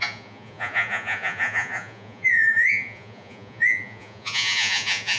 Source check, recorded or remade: remade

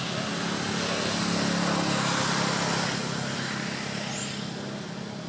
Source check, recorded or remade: recorded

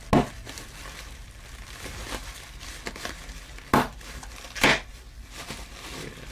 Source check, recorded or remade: recorded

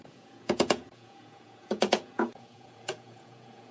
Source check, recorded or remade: remade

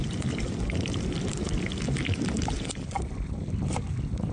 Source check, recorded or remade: recorded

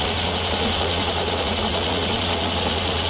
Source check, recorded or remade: remade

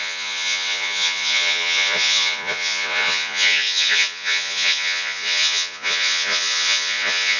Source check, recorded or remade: remade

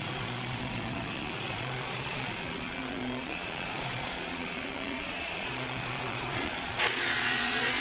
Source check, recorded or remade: remade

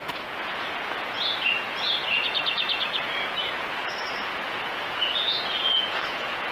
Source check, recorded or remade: remade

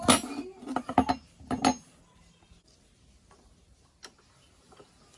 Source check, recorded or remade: recorded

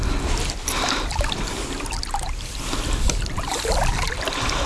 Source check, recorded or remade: recorded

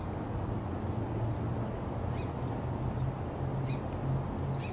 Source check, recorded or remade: recorded